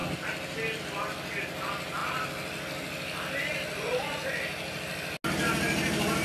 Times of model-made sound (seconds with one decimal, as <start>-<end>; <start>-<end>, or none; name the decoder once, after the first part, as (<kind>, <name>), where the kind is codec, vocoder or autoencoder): none